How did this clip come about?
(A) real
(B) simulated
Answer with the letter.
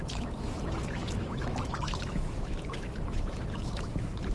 B